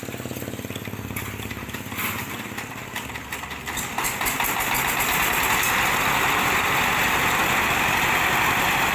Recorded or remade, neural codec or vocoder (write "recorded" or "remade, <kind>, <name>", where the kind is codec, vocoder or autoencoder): recorded